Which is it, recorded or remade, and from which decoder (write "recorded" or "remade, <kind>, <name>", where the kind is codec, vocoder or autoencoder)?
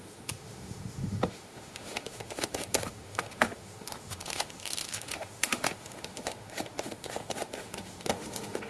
remade, autoencoder, DAC-VAE